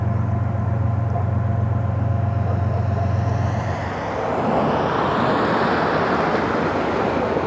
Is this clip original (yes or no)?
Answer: yes